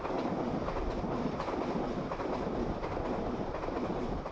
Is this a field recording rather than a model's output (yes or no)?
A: yes